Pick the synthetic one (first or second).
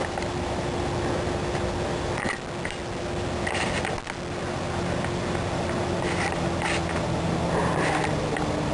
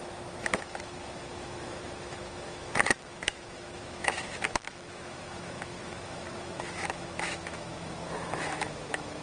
second